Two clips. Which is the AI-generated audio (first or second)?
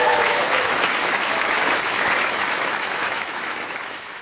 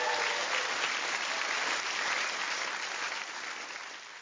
first